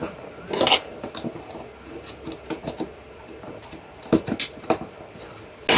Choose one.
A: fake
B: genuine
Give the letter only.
B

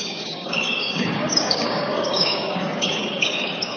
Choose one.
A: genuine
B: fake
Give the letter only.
B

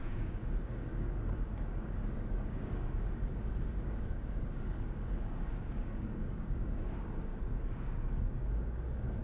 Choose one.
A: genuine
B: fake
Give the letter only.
B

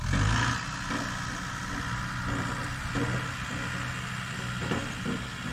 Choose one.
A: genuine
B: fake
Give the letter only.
A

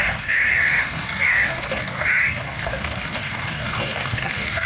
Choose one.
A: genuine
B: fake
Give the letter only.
B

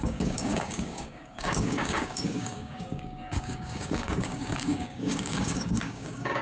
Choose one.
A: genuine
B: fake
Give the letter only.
B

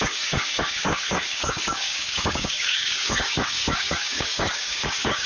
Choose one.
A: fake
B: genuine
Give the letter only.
A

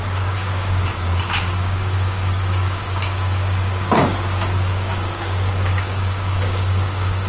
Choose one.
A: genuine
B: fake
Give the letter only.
B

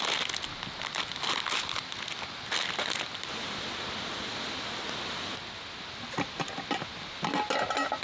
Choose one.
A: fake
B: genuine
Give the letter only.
B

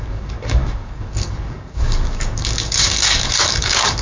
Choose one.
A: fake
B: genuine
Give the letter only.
A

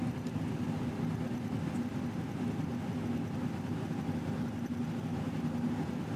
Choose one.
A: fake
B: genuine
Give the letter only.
B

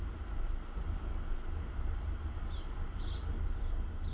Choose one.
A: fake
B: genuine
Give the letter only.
B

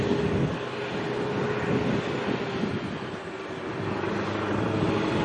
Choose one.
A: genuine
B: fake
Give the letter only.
A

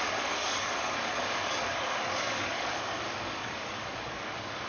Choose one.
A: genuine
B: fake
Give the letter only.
B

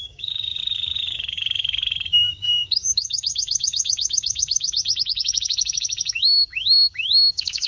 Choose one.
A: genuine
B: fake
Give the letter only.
B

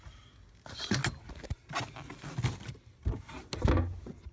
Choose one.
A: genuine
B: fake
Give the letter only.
A